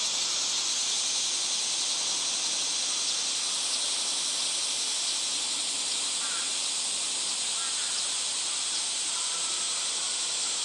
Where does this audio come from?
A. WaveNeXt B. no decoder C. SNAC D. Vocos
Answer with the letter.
B